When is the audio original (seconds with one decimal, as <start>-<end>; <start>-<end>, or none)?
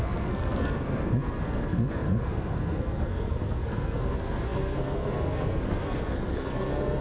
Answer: none